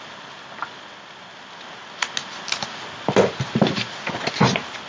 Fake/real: real